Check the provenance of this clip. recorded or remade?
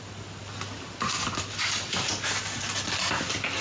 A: recorded